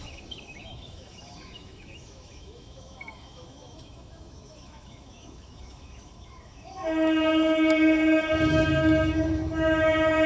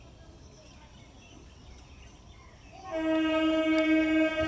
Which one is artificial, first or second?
first